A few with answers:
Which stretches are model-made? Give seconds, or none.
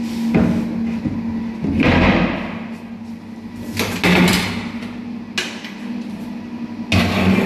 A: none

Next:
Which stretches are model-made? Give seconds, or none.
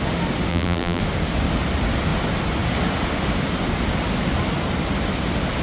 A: 0.5-1.0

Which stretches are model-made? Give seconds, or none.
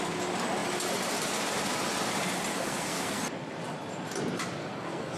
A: 2.5-3.2; 4.6-5.2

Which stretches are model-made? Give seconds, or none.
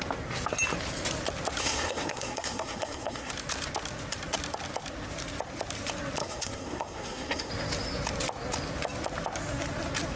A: 1.6-3.3; 6.2-7.5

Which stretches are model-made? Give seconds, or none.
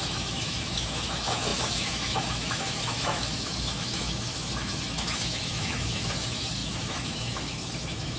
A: 0.0-8.2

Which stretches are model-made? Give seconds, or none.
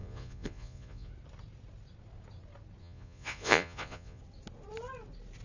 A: 0.0-1.1; 2.8-4.2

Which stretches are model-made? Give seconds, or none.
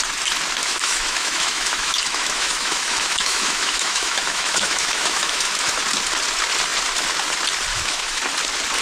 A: 0.6-5.8; 7.7-8.2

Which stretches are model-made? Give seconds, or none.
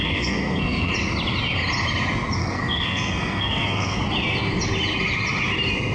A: 0.0-0.9; 2.4-4.0